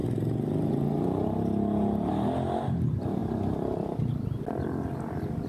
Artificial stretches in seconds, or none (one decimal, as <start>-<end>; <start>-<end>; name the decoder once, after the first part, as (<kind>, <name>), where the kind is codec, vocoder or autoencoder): none